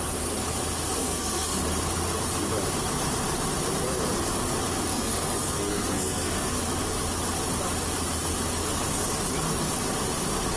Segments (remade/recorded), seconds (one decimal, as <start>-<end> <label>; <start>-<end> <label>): 0.0-1.0 recorded; 1.0-1.6 remade; 1.6-4.9 recorded; 4.9-6.6 remade; 6.6-10.6 recorded